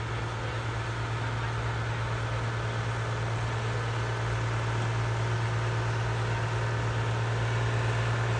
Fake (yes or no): no